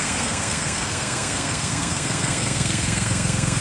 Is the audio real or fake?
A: fake